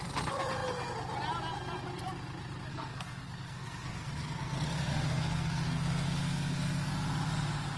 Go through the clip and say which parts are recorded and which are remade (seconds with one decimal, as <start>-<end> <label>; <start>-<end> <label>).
0.0-2.7 recorded; 2.7-6.9 remade; 6.9-7.8 recorded